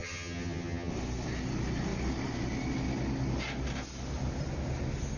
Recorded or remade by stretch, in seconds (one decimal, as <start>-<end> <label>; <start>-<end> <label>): 0.0-0.9 remade; 0.9-5.2 recorded